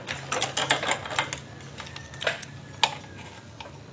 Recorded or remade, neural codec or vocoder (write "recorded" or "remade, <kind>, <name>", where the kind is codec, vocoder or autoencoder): recorded